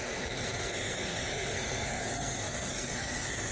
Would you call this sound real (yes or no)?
no